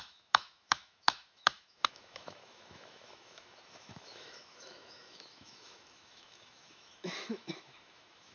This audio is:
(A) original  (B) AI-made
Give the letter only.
B